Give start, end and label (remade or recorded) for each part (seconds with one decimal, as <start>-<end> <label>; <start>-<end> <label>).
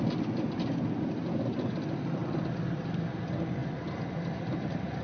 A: 0.0-5.0 recorded